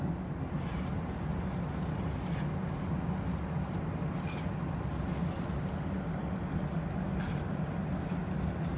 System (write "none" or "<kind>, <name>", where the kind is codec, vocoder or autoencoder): none